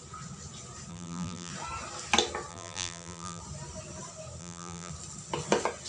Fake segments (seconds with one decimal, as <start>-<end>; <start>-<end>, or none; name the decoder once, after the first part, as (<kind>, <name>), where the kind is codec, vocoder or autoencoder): 0.9-1.5 (vocoder, BigVGAN v2); 2.5-3.4; 4.4-4.9